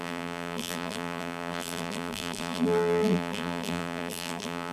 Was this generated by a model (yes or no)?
yes